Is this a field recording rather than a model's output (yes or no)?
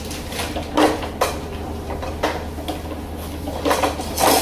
yes